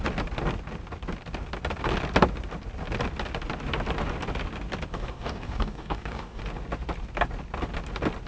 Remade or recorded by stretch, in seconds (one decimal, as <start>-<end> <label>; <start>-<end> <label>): 0.0-4.9 recorded; 4.9-6.4 remade; 6.4-8.3 recorded